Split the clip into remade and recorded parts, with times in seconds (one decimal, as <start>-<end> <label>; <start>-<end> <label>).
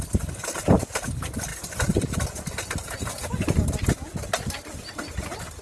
0.0-5.6 recorded